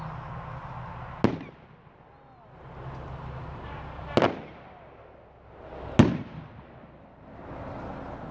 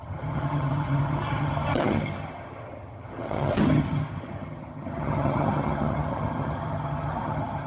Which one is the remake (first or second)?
second